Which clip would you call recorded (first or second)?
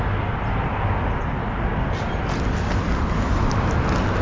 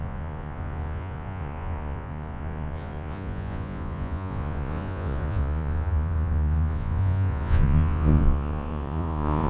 first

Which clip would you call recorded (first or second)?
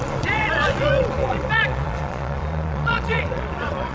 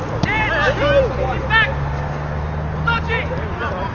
second